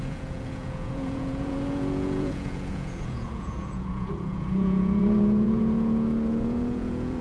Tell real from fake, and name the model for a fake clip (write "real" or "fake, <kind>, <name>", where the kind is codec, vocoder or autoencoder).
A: fake, vocoder, Vocos